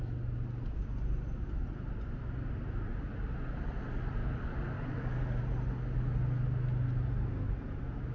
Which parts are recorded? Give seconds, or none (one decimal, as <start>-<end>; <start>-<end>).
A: 0.0-4.2; 5.4-8.1